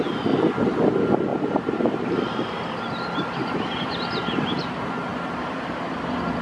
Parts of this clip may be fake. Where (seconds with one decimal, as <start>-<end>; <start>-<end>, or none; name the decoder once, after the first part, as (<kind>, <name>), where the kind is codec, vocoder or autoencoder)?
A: none